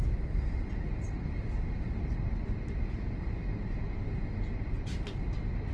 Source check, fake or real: real